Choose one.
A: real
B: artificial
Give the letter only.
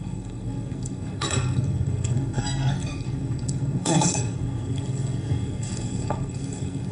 B